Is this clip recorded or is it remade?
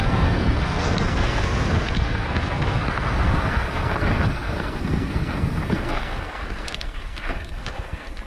remade